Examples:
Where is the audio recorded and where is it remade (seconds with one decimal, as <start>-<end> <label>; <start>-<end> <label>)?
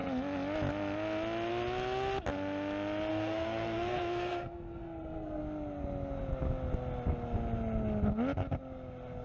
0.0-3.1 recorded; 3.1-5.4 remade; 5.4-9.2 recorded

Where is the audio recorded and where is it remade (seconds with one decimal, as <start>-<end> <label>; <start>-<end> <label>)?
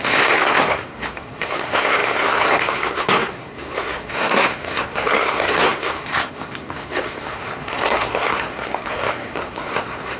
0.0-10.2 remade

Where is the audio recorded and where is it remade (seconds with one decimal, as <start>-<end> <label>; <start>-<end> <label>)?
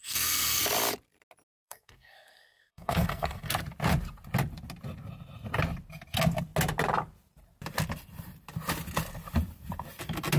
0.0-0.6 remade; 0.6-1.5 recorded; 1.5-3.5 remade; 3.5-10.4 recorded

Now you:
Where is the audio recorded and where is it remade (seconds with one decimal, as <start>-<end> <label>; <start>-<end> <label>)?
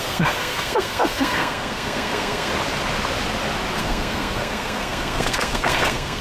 0.0-2.5 remade; 2.5-3.8 recorded; 3.8-6.2 remade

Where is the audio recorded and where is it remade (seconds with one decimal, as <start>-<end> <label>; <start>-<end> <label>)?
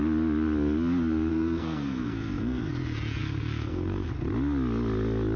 0.0-1.3 recorded; 1.3-2.7 remade; 2.7-3.2 recorded; 3.2-4.1 remade; 4.1-5.4 recorded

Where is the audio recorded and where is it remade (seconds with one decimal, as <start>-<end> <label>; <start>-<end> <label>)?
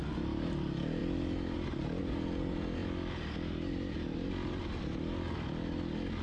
0.0-6.2 recorded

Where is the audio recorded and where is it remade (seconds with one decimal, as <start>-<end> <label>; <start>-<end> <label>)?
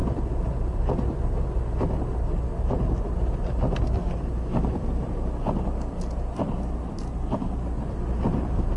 0.0-8.8 recorded